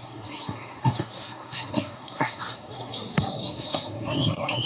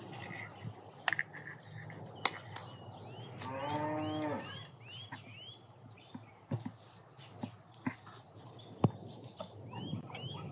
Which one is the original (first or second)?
second